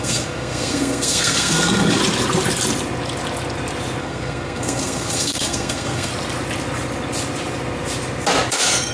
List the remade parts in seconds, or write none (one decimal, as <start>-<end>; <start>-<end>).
0.0-2.0; 4.0-6.1; 8.5-8.9